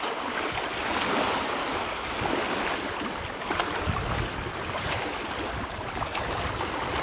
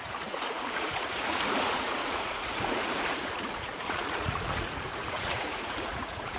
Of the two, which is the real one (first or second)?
first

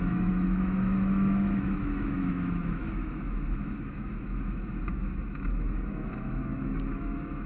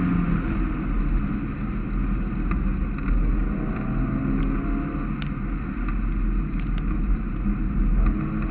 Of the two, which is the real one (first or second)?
second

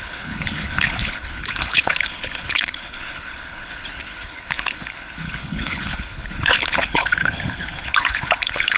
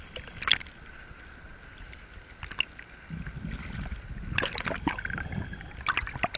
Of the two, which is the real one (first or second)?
second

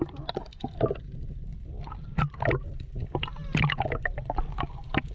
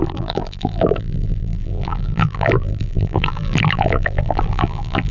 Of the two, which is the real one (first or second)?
first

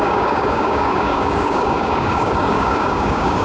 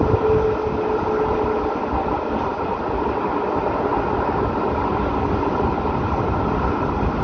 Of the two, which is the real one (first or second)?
second